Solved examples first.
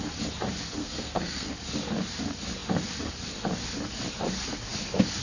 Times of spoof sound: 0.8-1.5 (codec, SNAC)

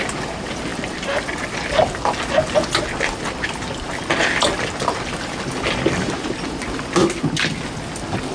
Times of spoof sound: none

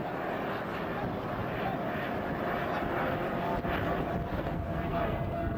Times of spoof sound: 4.3-5.6 (codec, SNAC)

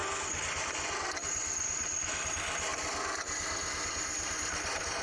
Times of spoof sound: none

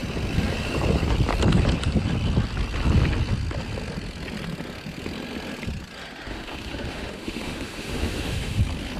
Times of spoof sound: 6.3-8.6 (autoencoder, DAC-VAE)

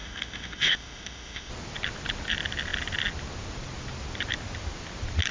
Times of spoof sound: 0.0-1.5 (codec, ZipCodec)

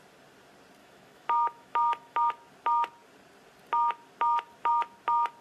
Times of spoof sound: 0.8-2.3 (autoencoder, DAC-VAE)

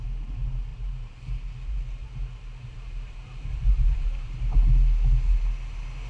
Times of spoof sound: 0.7-1.5 (vocoder, BigVGAN v2); 2.0-4.5